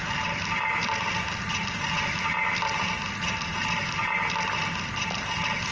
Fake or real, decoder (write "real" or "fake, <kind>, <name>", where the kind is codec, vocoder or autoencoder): real